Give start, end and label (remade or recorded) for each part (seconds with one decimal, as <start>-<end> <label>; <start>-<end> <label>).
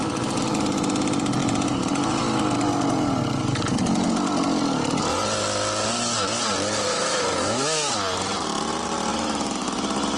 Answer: 0.0-6.9 recorded; 6.9-7.9 remade; 7.9-9.1 recorded; 9.1-9.7 remade; 9.7-10.2 recorded